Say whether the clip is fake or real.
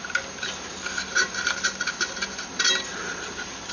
real